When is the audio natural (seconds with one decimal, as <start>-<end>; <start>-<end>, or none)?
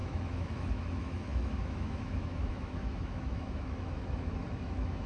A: none